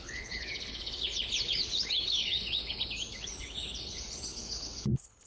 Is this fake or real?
fake